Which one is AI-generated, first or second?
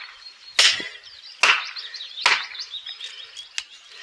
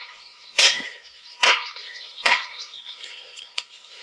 second